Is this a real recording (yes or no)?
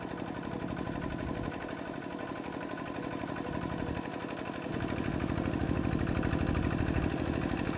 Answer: yes